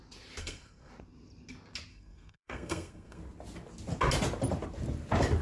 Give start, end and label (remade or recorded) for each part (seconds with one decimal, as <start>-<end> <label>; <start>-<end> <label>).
0.0-0.4 recorded; 0.4-0.9 remade; 0.9-1.9 recorded; 1.9-3.2 remade; 3.2-5.4 recorded